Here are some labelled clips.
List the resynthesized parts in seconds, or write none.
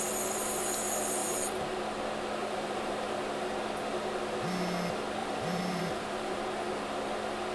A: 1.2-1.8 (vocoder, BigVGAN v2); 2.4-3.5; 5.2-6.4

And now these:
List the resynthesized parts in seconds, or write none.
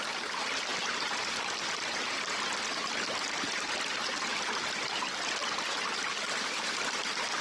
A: none